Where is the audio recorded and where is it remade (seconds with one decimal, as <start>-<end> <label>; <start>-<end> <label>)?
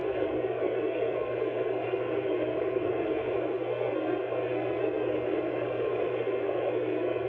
0.0-7.3 remade